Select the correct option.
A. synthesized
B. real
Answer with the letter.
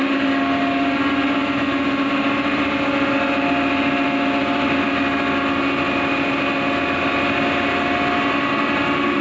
B